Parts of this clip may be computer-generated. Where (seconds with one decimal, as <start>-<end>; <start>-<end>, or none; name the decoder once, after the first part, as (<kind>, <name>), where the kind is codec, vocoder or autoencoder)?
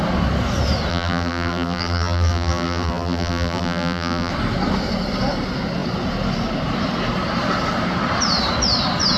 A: 0.9-4.3 (vocoder, BigVGAN v2)